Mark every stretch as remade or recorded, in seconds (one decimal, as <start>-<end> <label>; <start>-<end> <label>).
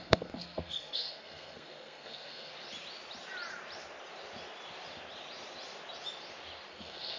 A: 0.0-2.5 remade; 2.5-6.7 recorded; 6.7-7.2 remade